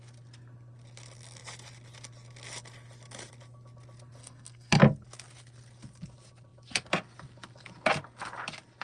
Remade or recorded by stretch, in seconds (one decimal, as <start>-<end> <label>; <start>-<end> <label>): 0.0-4.2 recorded; 4.2-4.8 remade; 4.8-8.8 recorded